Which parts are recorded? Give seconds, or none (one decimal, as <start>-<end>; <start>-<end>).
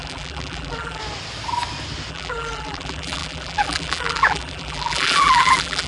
1.0-2.1